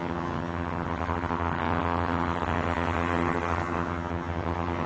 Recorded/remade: remade